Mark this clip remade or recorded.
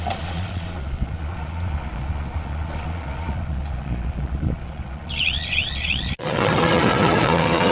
remade